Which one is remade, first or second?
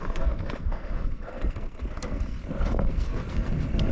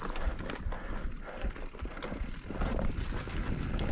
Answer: first